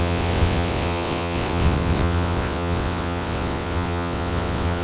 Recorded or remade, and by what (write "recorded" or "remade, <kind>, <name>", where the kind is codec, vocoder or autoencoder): remade, vocoder, WaveNeXt